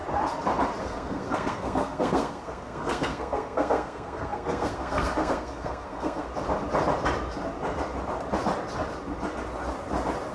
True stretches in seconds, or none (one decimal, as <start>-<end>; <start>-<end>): 0.0-0.8; 6.3-10.3